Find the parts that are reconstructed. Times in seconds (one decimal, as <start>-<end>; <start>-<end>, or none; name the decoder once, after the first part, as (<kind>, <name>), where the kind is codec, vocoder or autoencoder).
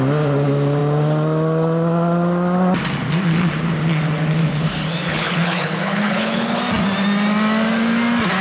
5.1-6.6 (codec, HILCodec)